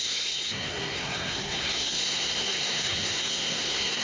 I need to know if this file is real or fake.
fake